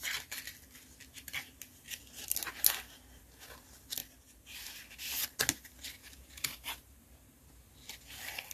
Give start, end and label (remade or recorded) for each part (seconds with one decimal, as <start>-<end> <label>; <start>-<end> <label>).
0.0-4.0 recorded; 4.0-4.7 remade; 4.7-6.0 recorded; 6.0-7.5 remade; 7.5-8.5 recorded